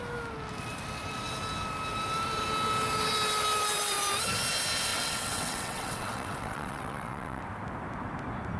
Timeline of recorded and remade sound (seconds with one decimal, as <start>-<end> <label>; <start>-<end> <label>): 0.0-4.9 recorded; 4.9-7.4 remade; 7.4-8.6 recorded